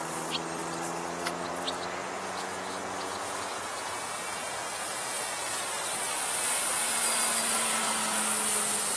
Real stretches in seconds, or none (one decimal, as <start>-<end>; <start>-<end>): 0.0-2.0; 5.6-9.0